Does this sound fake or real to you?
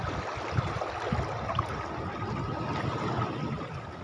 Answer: real